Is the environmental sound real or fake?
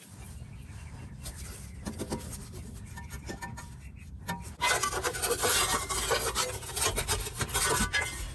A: real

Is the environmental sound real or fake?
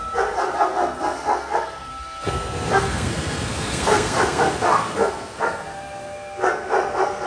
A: fake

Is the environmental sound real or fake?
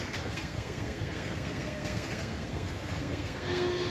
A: fake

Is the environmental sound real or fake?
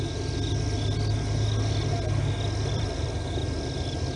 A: real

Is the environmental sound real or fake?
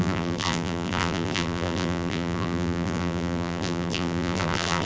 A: fake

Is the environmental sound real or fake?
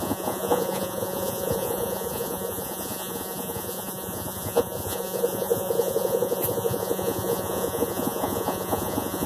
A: fake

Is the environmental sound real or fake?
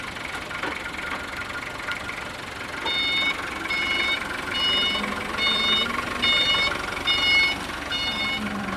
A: real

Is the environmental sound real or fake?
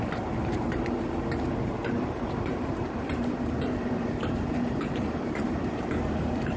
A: fake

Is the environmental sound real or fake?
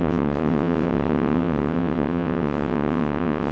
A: fake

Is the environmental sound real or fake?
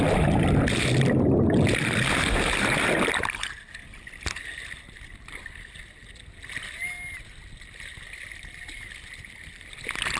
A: real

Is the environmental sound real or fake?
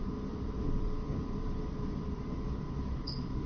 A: fake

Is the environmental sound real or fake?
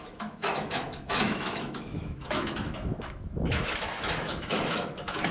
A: fake